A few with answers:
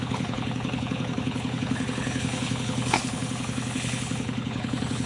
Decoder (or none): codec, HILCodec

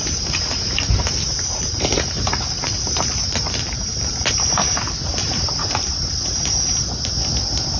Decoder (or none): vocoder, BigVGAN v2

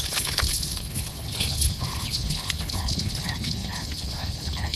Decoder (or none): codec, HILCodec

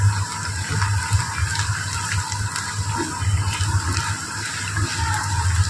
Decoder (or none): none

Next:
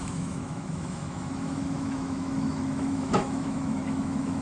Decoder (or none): autoencoder, DAC-VAE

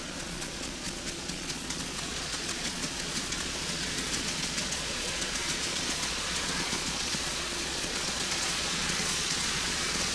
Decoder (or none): vocoder, Vocos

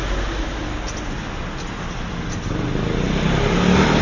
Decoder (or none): none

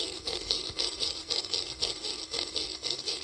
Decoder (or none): codec, SNAC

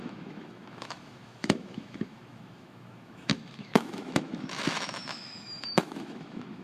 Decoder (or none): autoencoder, DAC-VAE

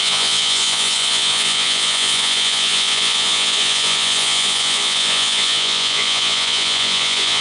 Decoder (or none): vocoder, Vocos